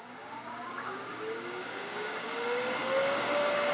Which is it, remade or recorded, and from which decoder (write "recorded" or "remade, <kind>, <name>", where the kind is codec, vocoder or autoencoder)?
remade, codec, DAC